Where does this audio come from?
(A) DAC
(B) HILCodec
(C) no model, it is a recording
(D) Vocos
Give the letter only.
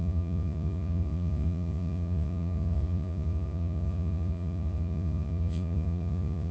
D